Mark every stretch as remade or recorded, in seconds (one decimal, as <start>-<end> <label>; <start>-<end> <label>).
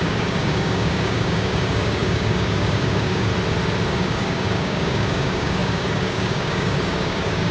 0.0-3.3 remade; 3.3-3.9 recorded; 3.9-7.5 remade